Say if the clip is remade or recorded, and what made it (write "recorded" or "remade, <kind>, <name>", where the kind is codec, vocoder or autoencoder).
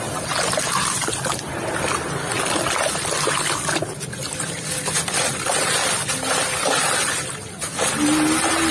recorded